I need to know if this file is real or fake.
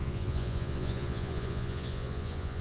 fake